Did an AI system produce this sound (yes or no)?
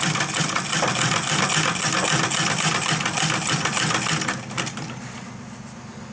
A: no